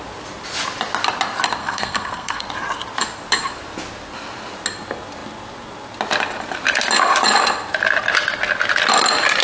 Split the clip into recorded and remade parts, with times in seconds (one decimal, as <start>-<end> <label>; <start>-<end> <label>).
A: 0.0-1.6 recorded; 1.6-2.4 remade; 2.4-9.4 recorded